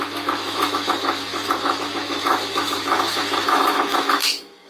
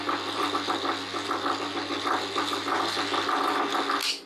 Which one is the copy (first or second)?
first